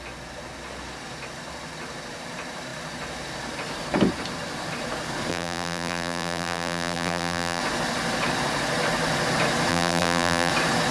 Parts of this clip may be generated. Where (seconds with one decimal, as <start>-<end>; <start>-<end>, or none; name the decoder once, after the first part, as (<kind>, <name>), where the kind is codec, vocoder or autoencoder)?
5.3-7.6 (vocoder, BigVGAN v2); 9.7-10.5